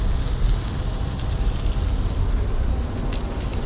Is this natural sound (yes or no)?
yes